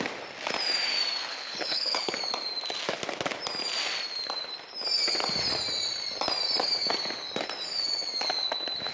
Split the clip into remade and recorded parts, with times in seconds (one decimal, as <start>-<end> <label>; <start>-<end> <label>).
0.0-1.3 recorded; 1.3-2.1 remade; 2.1-8.9 recorded